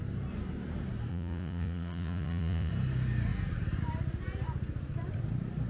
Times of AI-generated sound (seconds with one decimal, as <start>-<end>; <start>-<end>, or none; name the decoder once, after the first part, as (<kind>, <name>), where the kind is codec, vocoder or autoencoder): 1.1-2.7 (vocoder, Vocos)